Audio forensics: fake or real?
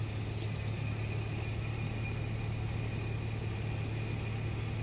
real